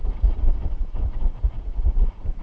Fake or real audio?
fake